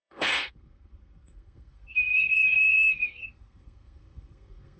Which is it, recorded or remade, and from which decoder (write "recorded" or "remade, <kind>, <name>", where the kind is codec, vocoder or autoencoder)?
remade, codec, SNAC